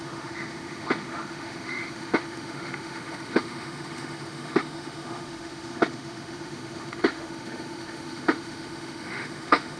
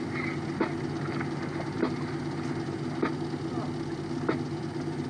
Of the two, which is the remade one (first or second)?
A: first